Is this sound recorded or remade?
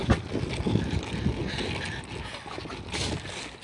recorded